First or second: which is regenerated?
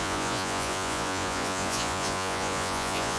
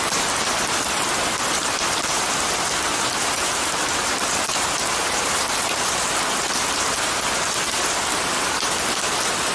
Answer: first